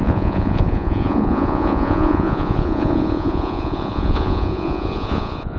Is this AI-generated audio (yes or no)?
yes